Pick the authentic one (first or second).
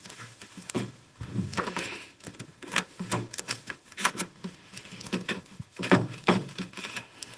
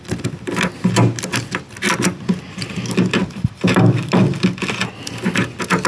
second